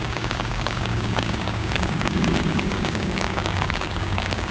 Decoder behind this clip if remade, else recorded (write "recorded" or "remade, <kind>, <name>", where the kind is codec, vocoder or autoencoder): remade, codec, DAC